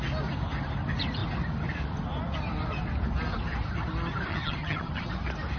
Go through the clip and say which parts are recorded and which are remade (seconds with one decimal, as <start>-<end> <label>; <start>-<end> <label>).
0.0-4.3 recorded; 4.3-5.1 remade; 5.1-5.6 recorded